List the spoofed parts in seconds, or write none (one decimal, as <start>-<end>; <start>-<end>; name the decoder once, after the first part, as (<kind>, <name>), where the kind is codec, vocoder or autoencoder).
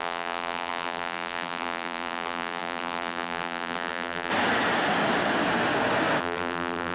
0.0-4.3 (vocoder, BigVGAN v2); 6.2-6.9